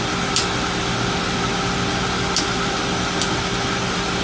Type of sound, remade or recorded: recorded